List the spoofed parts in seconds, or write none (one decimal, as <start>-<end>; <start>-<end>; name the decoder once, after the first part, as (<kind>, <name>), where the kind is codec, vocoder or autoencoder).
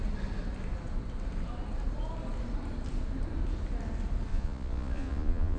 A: 4.3-5.6 (vocoder, Vocos)